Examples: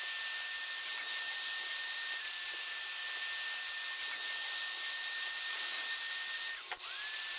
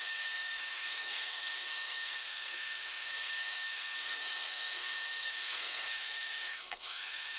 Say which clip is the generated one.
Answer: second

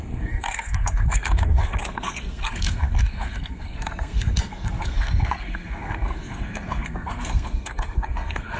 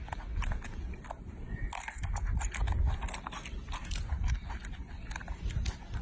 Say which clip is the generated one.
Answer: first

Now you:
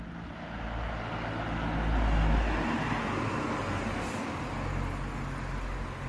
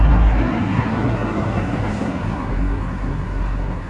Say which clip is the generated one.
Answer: second